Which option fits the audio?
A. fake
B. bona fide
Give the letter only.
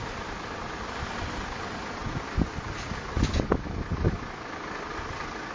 B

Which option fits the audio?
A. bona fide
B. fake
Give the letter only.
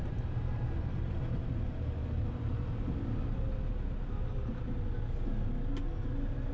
A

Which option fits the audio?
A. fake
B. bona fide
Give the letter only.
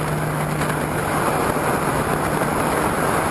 B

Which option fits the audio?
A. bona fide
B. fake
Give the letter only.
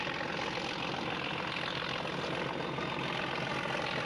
A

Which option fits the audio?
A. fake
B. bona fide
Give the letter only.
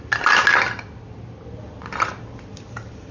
B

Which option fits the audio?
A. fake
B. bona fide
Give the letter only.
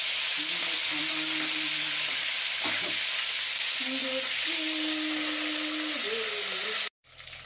B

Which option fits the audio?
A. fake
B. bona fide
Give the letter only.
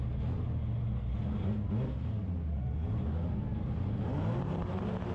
B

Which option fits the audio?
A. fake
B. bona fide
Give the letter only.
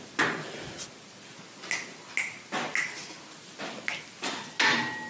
B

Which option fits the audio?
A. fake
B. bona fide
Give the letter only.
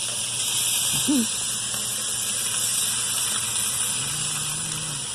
B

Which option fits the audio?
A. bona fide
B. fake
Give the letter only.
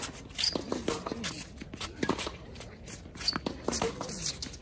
A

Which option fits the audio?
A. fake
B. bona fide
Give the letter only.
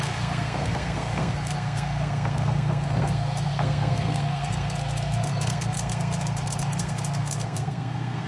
A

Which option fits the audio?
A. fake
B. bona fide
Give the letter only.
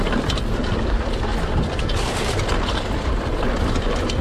B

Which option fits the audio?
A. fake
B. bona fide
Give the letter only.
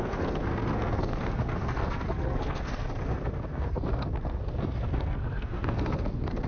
A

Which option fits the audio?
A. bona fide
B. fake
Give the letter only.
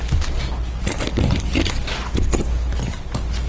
A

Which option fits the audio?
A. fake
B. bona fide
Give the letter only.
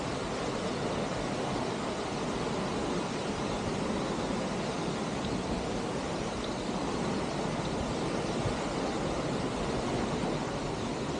B